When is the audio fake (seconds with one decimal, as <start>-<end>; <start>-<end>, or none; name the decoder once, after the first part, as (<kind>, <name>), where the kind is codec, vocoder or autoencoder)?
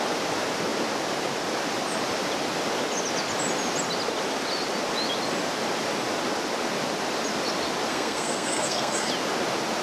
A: 7.9-9.1 (codec, SNAC)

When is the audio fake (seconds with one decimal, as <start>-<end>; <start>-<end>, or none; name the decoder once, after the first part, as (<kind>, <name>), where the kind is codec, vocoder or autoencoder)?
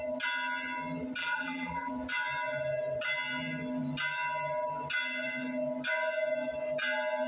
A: 1.2-1.9 (vocoder, BigVGAN v2)